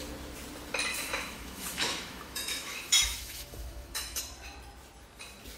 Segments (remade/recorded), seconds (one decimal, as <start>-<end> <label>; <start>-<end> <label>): 0.0-0.9 recorded; 0.9-4.2 remade; 4.2-5.6 recorded